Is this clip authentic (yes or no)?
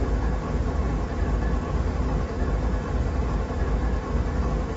yes